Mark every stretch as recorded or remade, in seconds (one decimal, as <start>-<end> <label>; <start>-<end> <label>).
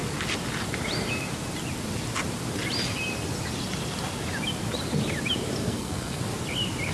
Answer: 0.0-5.6 recorded; 5.6-6.2 remade; 6.2-6.9 recorded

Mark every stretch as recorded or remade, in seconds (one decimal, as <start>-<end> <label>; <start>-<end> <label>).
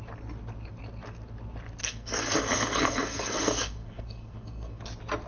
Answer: 0.0-1.8 recorded; 1.8-4.8 remade; 4.8-5.3 recorded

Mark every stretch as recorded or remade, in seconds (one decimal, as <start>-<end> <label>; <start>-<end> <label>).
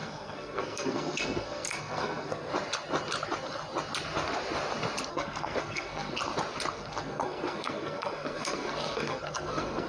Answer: 0.0-2.5 remade; 2.5-5.1 recorded; 5.1-6.2 remade; 6.2-6.7 recorded; 6.7-9.9 remade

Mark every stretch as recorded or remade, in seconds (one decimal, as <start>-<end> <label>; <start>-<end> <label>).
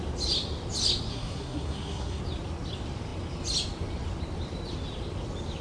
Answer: 0.0-1.1 recorded; 1.1-2.2 remade; 2.2-5.6 recorded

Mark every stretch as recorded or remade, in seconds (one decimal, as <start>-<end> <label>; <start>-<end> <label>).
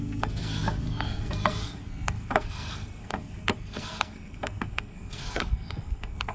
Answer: 0.0-6.3 remade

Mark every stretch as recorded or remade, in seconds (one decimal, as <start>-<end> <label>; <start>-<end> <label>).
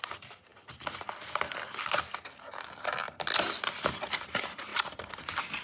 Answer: 0.0-5.6 recorded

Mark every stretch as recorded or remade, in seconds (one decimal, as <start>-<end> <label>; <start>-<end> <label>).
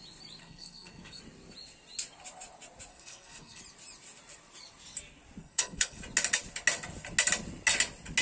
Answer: 0.0-0.4 recorded; 0.4-1.2 remade; 1.2-2.9 recorded; 2.9-3.6 remade; 3.6-5.4 recorded; 5.4-6.0 remade; 6.0-8.2 recorded